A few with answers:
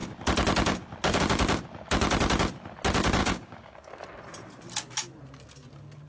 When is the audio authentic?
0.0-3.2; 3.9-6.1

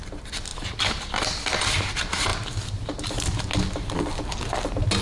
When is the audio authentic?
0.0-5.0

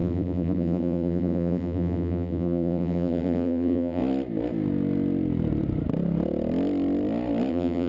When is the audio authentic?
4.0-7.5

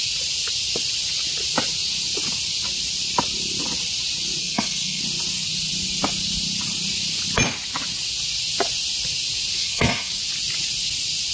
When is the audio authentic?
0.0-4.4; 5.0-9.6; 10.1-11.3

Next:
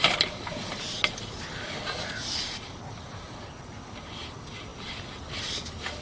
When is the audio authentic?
0.0-6.0

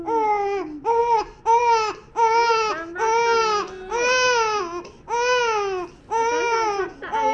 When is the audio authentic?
0.0-7.3